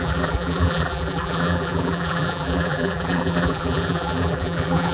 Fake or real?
fake